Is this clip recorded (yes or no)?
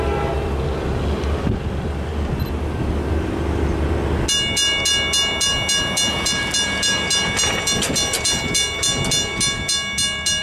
yes